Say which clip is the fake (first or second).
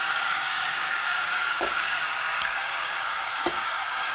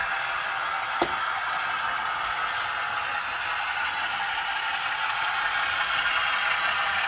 first